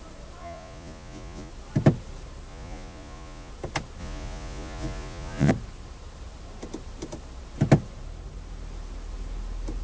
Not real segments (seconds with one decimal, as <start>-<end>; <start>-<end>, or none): 0.4-1.5; 2.5-3.5; 4.0-5.5